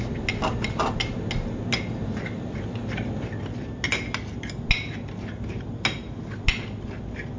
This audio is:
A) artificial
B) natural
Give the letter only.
B